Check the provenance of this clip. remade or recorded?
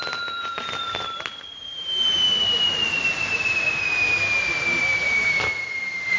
recorded